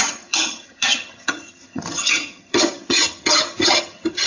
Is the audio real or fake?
fake